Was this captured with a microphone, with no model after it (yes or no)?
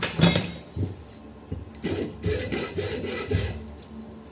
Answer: no